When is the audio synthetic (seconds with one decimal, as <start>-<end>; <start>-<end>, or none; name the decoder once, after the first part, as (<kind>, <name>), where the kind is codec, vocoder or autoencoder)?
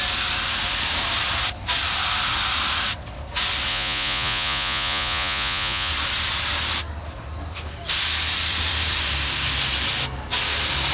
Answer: 3.7-5.9 (vocoder, Vocos)